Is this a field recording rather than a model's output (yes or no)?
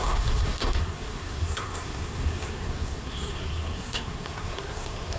no